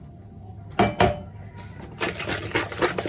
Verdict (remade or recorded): recorded